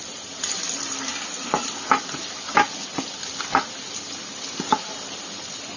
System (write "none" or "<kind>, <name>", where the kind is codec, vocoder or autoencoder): none